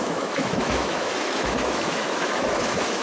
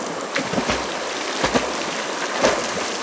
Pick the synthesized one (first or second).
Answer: first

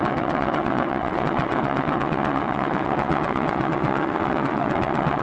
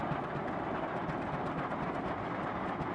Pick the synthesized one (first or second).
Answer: first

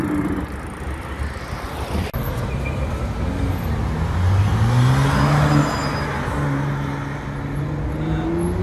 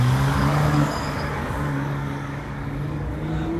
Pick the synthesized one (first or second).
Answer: second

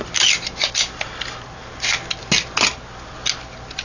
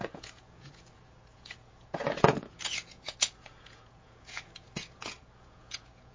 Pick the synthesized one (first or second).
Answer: second